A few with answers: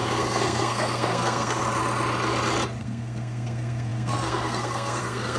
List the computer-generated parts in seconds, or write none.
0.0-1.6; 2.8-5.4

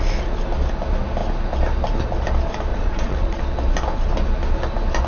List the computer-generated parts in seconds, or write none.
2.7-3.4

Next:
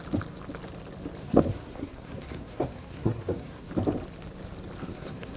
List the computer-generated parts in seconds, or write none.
1.2-3.7; 4.8-5.4